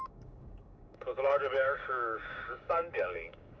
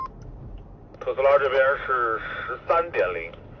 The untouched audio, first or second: second